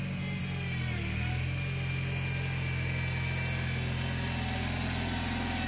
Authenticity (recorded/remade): recorded